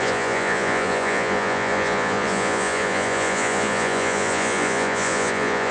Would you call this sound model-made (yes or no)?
yes